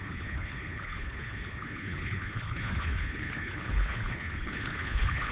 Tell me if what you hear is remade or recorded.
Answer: remade